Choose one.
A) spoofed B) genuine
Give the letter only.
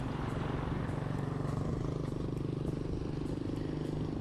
B